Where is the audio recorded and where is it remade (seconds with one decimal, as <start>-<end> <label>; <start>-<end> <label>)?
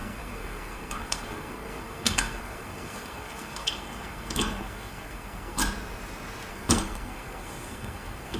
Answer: 0.0-5.6 remade; 5.6-6.5 recorded; 6.5-8.4 remade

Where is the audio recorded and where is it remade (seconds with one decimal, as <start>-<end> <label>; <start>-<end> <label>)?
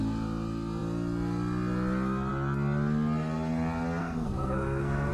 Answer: 0.0-4.0 recorded; 4.0-5.1 remade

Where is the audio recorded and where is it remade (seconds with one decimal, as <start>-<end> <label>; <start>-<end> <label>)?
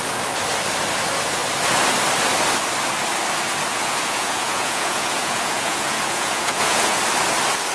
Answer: 0.0-3.7 recorded; 3.7-7.0 remade; 7.0-7.7 recorded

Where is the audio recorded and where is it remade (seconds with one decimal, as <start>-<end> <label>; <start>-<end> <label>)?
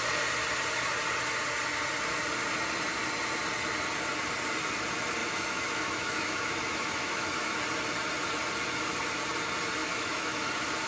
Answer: 0.0-5.2 recorded; 5.2-7.6 remade; 7.6-9.8 recorded; 9.8-10.5 remade; 10.5-10.9 recorded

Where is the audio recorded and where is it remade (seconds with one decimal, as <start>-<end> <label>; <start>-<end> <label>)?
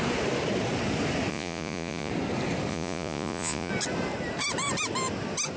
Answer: 0.0-1.3 recorded; 1.3-2.1 remade; 2.1-2.7 recorded; 2.7-3.7 remade; 3.7-5.6 recorded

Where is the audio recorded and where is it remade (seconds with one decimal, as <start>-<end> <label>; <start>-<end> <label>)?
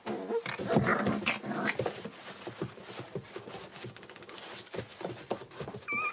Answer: 0.0-6.1 recorded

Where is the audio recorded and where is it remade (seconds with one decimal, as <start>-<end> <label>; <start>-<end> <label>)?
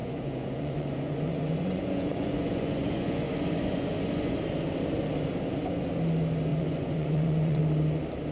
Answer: 0.0-4.4 remade; 4.4-6.5 recorded; 6.5-7.6 remade; 7.6-8.3 recorded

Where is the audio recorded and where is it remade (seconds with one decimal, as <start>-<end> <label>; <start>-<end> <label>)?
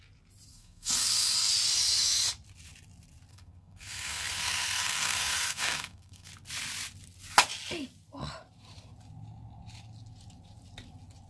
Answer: 0.0-0.5 recorded; 0.5-1.5 remade; 1.5-3.3 recorded; 3.3-6.3 remade; 6.3-11.3 recorded